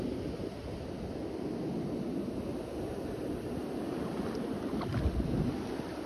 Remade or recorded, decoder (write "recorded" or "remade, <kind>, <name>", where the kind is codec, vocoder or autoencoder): recorded